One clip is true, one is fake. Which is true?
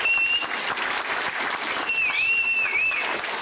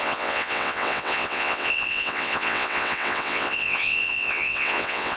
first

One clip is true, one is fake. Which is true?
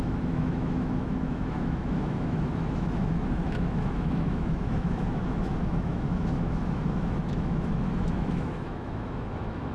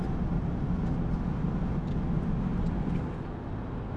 second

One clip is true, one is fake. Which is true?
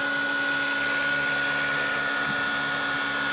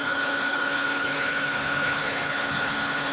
first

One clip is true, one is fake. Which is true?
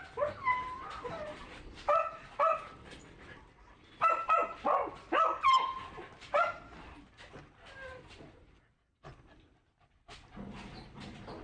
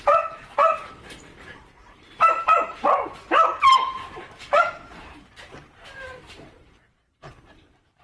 first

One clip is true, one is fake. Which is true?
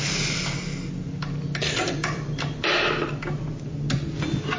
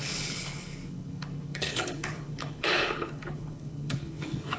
first